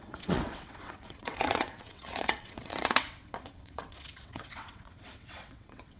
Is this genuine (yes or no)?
no